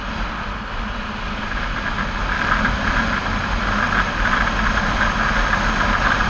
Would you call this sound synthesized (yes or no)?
no